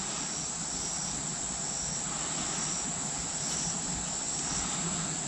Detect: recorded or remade recorded